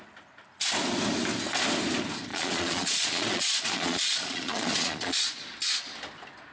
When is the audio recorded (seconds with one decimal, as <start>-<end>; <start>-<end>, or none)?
0.0-2.3; 5.4-6.5